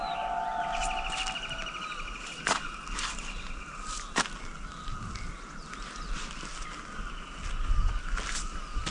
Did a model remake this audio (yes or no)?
no